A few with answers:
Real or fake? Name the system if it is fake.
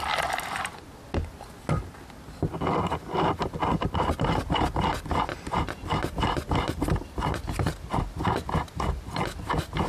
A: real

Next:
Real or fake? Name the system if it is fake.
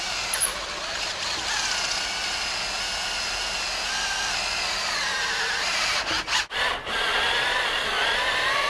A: real